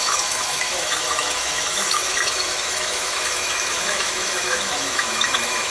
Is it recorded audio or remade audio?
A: remade